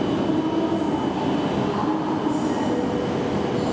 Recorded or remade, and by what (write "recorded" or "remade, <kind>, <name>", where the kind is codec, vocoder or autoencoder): recorded